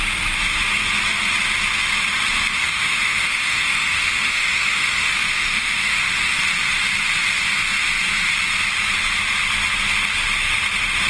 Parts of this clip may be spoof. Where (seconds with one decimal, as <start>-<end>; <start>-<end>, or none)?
2.6-6.4